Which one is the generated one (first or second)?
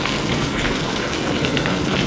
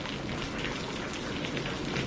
first